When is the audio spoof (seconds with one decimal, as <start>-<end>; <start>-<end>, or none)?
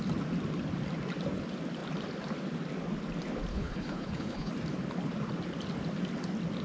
3.5-4.5